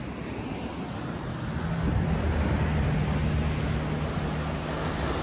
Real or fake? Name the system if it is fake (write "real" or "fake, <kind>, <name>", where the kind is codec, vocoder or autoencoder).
real